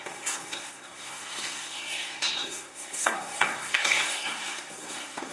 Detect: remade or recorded remade